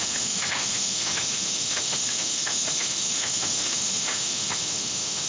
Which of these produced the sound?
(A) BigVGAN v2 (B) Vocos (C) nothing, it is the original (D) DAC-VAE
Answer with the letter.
D